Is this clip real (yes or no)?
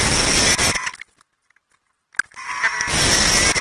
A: yes